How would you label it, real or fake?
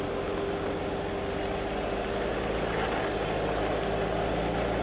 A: real